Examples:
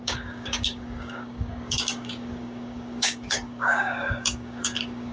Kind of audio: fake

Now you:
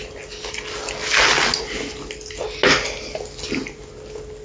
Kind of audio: real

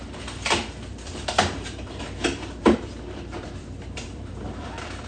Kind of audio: fake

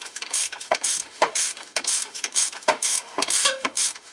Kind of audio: fake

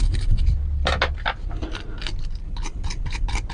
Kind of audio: real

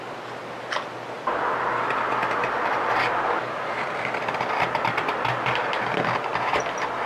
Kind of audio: real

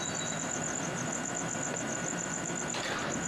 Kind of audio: fake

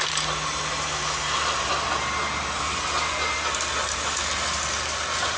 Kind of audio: real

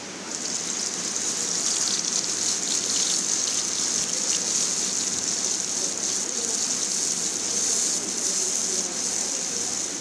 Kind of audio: real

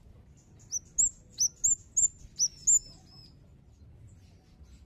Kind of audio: real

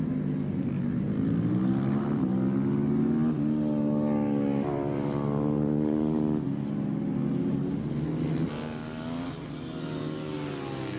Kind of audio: real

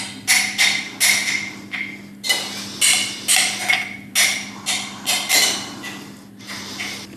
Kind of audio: real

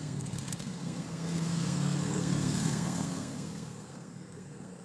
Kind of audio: fake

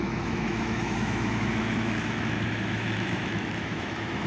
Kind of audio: fake